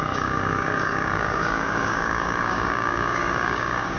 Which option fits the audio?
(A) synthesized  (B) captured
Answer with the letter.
A